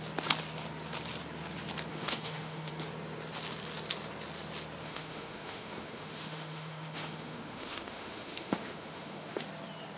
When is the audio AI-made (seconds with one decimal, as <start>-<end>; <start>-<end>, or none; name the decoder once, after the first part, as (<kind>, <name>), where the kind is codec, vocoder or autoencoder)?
1.9-2.7 (autoencoder, DAC-VAE); 4.8-9.4